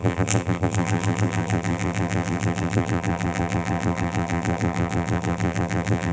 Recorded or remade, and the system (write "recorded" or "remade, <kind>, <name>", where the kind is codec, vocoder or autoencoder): remade, vocoder, BigVGAN v2